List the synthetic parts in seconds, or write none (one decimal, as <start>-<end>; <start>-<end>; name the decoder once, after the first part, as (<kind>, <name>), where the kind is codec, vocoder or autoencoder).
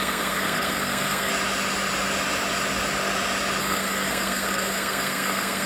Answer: 0.0-1.3 (codec, SNAC); 3.6-5.7